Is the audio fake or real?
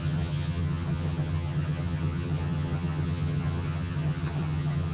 fake